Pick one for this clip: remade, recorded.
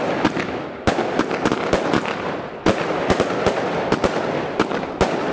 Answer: recorded